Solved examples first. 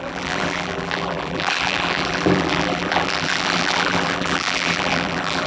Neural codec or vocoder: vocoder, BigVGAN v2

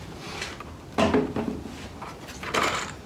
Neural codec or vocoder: none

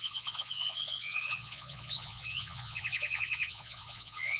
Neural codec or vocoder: vocoder, Vocos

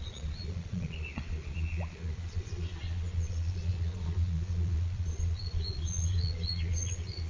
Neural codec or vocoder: vocoder, Vocos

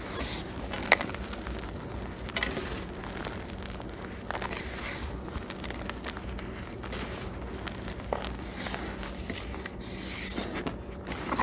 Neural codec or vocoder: none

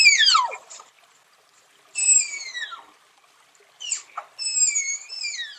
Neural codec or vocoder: none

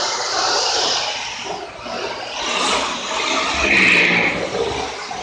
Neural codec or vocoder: none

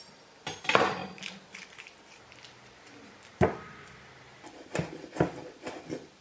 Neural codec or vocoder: vocoder, BigVGAN v2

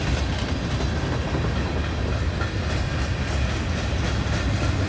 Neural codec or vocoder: none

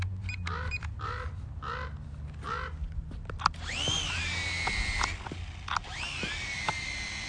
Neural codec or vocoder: none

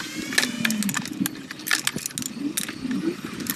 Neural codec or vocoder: none